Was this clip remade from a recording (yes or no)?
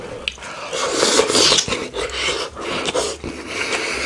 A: no